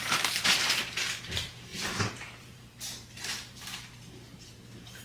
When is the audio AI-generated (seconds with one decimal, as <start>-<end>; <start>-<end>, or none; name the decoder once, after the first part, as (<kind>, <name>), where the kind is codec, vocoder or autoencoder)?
0.0-5.0 (vocoder, BigVGAN v2)